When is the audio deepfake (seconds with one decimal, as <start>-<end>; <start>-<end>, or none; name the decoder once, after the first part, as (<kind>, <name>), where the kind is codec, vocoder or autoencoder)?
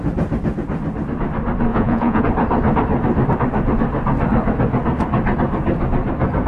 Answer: 1.7-2.2 (vocoder, Vocos)